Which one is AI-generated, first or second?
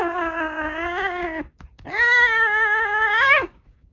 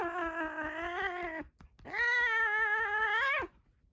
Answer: first